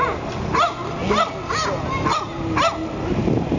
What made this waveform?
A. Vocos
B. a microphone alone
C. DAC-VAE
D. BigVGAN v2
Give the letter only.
B